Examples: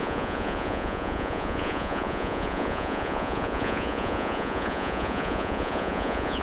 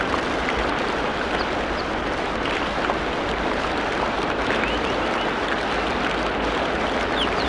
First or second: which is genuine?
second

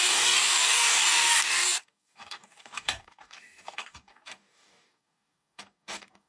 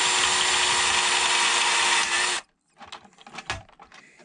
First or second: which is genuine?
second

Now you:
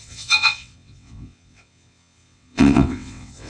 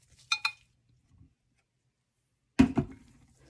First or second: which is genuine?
second